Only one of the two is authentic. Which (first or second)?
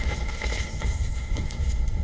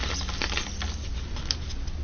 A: second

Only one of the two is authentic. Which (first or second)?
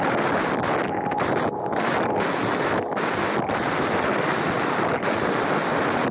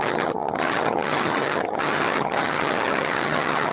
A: first